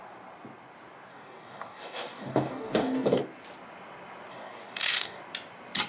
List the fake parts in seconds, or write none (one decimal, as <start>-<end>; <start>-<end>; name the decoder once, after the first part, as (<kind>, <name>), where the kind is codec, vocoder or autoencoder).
1.1-3.2 (codec, DAC); 4.3-5.2